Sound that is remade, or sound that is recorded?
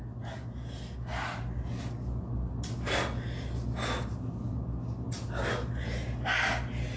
recorded